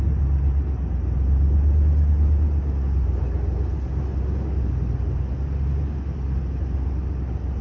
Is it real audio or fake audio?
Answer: real